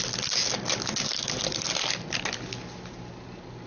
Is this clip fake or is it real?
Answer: real